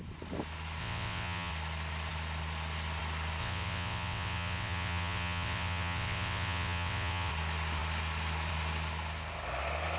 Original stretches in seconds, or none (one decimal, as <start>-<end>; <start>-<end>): 0.0-0.8; 1.5-3.4; 7.3-10.0